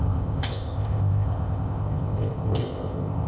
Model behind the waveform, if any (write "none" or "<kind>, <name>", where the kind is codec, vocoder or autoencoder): codec, ZipCodec